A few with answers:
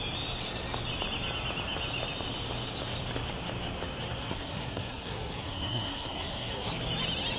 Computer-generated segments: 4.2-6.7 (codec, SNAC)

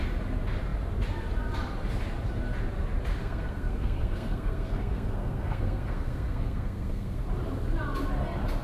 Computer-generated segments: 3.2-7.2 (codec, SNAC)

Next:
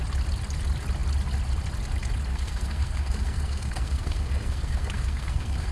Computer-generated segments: 2.3-5.7 (codec, SNAC)

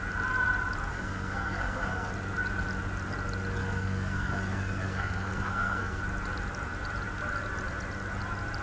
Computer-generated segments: 0.9-2.1 (codec, SNAC); 3.6-6.0

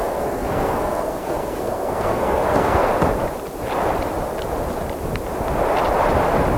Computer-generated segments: 0.0-2.9 (codec, SNAC)

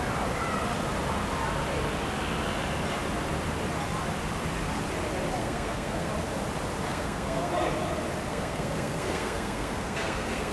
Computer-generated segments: 5.4-6.1 (codec, SNAC); 6.9-7.5; 8.3-10.5